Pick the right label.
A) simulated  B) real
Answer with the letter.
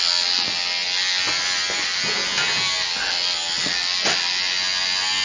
B